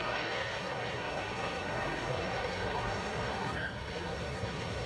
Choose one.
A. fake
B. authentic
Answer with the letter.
A